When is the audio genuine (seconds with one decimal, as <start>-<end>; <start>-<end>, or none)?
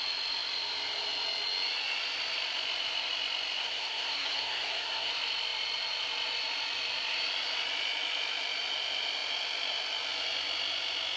0.0-3.6; 5.1-11.2